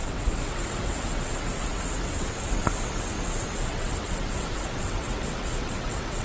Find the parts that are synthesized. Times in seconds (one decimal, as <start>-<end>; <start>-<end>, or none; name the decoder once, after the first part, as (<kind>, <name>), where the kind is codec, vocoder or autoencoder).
0.0-6.2 (vocoder, WaveNeXt)